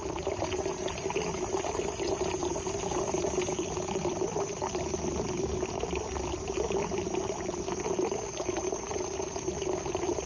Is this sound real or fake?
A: real